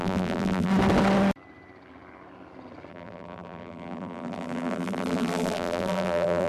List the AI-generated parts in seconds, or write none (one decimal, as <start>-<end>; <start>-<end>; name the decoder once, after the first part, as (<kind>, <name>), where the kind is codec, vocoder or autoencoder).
0.0-0.7 (vocoder, BigVGAN v2); 2.9-6.5